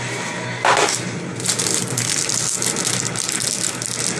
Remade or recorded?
recorded